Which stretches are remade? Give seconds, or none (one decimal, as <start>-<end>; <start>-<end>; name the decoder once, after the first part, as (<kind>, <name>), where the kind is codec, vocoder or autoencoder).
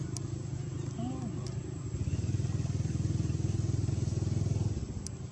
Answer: none